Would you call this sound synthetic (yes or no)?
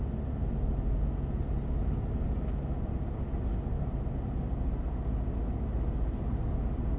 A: no